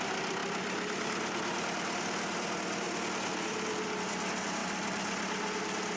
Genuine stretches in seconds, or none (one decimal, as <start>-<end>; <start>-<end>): 0.0-6.0